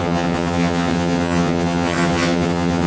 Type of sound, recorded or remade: remade